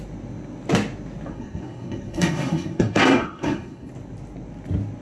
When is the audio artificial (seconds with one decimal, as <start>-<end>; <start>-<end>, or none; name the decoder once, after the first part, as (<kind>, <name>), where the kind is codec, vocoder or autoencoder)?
1.3-3.9 (codec, SNAC)